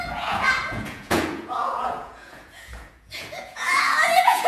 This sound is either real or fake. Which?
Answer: fake